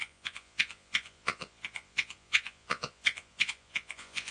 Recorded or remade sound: remade